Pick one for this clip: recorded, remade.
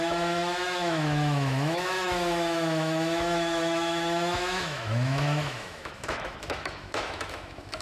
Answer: remade